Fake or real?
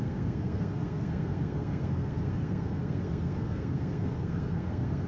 fake